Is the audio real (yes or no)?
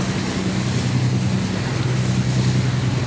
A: yes